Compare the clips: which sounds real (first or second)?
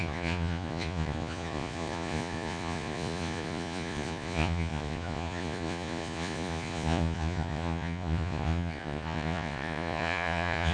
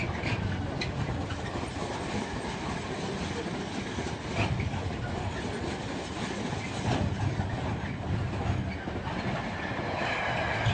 second